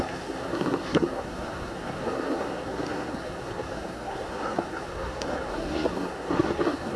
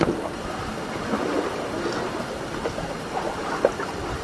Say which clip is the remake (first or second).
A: first